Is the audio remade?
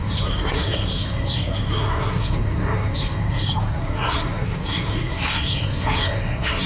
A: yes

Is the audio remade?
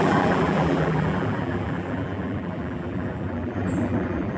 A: yes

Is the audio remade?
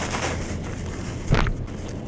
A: no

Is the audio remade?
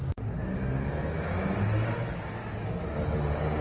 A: no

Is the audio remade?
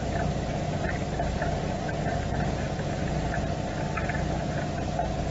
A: no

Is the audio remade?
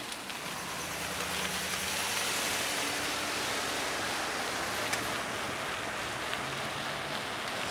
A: no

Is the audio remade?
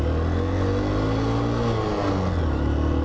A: no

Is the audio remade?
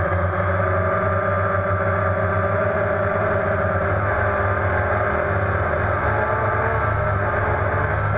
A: no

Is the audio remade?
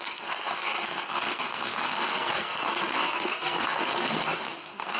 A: yes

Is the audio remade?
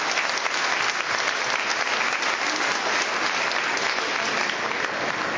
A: no